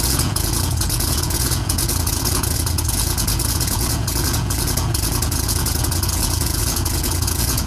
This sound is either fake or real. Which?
fake